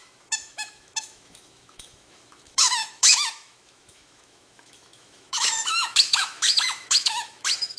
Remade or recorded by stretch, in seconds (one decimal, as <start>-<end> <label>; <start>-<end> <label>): 0.0-7.8 remade